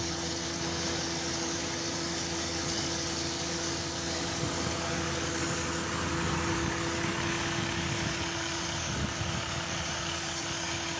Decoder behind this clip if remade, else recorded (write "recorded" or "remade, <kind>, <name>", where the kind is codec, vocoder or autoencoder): remade, codec, DAC